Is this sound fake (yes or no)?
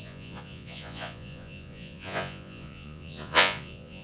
yes